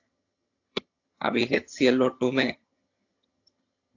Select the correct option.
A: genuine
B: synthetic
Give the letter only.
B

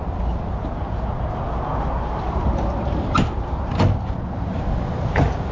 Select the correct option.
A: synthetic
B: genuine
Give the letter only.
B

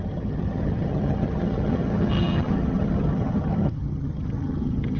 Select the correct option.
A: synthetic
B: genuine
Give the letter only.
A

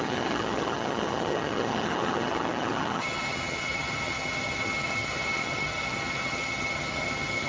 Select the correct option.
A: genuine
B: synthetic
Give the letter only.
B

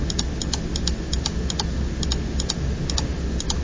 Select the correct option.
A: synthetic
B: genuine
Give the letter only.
B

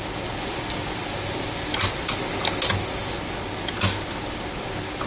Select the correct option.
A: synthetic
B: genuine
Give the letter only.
B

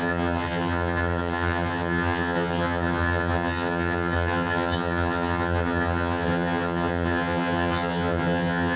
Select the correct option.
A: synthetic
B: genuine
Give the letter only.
A